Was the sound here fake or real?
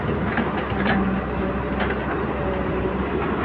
real